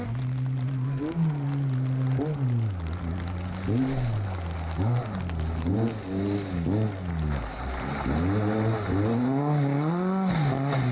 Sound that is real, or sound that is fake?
real